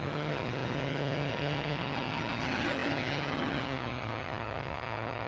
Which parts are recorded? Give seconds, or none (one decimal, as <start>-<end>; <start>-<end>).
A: none